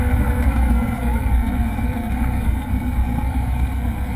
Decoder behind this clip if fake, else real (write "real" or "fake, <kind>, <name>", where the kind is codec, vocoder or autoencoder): fake, codec, SNAC